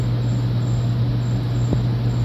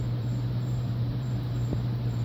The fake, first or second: second